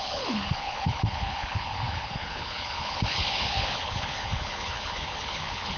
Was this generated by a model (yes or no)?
yes